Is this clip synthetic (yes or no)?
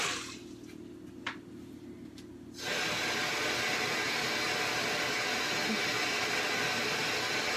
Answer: no